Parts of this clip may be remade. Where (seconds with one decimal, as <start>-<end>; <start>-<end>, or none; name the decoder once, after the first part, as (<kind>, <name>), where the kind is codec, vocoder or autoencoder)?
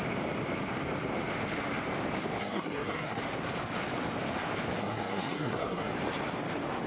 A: 2.4-3.2 (codec, SNAC); 4.8-5.9